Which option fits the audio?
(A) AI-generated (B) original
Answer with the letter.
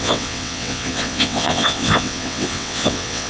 A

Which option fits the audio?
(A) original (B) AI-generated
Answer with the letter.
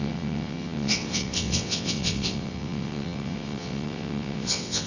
B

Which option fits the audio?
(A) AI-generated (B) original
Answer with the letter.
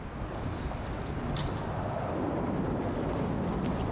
B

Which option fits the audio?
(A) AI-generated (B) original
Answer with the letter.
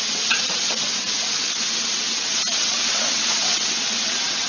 A